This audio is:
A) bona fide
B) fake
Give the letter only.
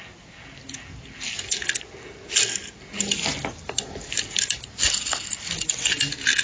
A